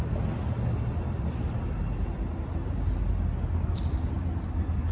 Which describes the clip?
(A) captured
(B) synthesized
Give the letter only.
A